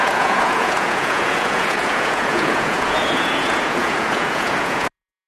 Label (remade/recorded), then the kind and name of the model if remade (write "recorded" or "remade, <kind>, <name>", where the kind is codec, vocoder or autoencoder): remade, vocoder, Vocos